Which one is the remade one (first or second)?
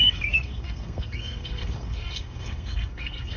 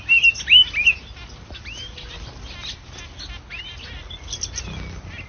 first